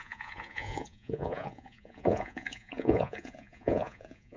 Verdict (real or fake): fake